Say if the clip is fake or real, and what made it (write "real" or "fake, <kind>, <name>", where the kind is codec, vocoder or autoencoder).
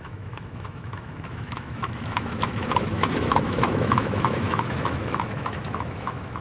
fake, autoencoder, DAC-VAE